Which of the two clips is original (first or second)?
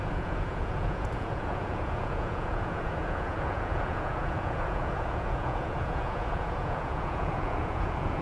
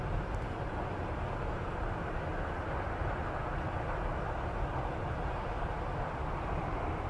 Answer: second